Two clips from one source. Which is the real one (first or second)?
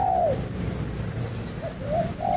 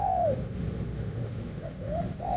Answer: first